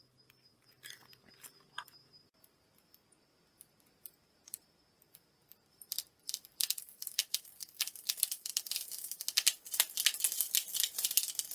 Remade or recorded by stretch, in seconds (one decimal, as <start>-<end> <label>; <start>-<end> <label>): 0.0-5.4 recorded; 5.4-8.1 remade; 8.1-11.5 recorded